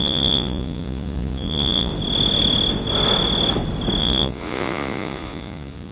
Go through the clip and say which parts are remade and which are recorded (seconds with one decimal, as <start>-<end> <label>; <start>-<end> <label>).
0.0-1.9 remade; 1.9-4.0 recorded; 4.0-5.9 remade